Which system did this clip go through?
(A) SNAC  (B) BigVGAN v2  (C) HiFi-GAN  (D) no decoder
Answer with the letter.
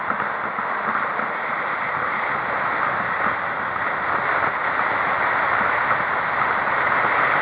D